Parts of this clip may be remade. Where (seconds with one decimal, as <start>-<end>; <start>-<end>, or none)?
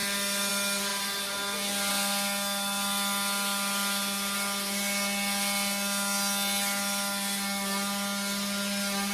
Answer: none